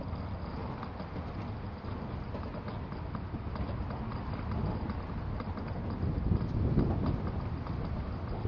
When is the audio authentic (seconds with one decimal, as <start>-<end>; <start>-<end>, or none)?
0.0-8.5